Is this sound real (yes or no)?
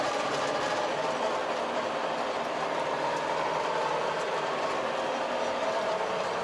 no